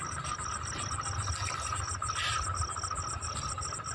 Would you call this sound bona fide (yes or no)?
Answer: yes